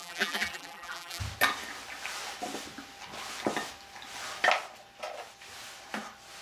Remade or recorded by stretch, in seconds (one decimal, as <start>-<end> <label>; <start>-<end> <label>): 0.0-1.2 remade; 1.2-6.4 recorded